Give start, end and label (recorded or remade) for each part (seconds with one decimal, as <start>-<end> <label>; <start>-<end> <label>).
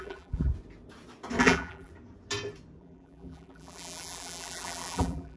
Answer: 0.0-0.5 remade; 0.5-1.4 recorded; 1.4-1.9 remade; 1.9-2.8 recorded; 2.8-5.4 remade